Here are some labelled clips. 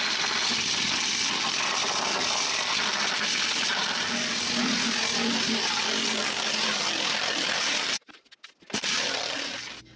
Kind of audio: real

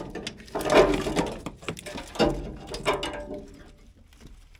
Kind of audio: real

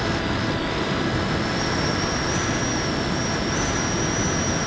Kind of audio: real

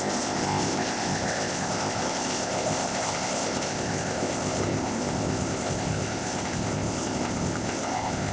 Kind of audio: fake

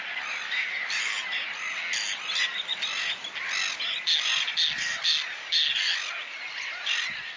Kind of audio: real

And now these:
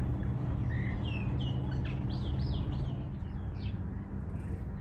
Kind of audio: real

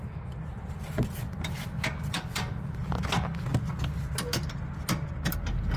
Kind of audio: real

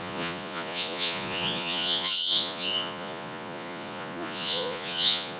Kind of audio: fake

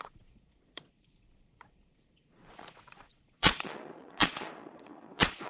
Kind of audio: fake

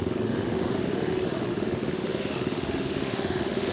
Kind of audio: fake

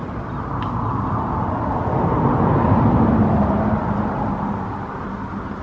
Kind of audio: real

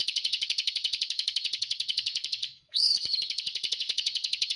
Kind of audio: fake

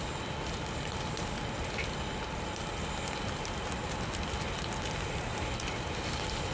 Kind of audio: real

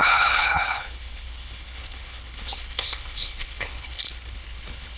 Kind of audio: fake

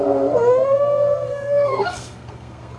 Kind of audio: fake